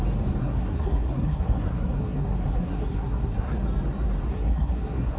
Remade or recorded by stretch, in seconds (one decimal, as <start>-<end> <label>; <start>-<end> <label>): 0.0-0.4 recorded; 0.4-3.5 remade; 3.5-4.3 recorded; 4.3-5.2 remade